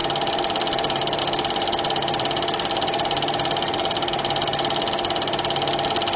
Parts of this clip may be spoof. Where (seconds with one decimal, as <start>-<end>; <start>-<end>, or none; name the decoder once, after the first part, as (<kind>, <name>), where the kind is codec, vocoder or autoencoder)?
0.0-1.2 (vocoder, BigVGAN v2); 2.0-4.1